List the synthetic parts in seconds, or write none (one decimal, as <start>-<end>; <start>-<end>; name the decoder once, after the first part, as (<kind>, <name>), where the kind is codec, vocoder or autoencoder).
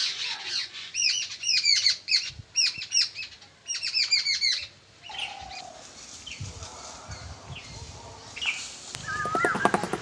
0.0-2.3 (vocoder, Vocos)